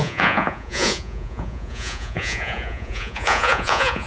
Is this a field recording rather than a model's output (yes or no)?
no